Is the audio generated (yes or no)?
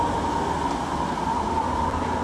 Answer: no